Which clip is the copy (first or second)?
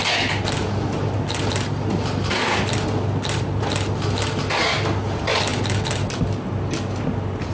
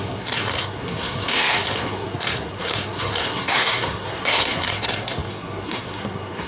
second